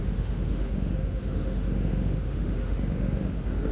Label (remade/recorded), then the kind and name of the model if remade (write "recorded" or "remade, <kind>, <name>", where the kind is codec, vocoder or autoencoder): remade, autoencoder, DAC-VAE